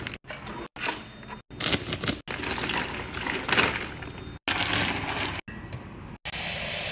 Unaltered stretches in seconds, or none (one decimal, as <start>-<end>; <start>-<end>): 0.0-6.9